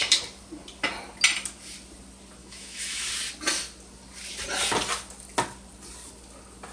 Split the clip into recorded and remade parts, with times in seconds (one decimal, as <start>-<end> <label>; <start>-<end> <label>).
0.0-2.4 recorded; 2.4-3.1 remade; 3.1-6.7 recorded